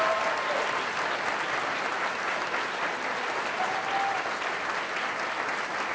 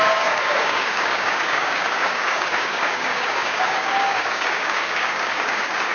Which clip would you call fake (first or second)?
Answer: second